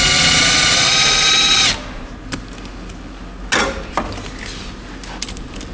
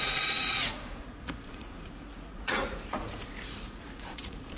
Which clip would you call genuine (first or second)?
first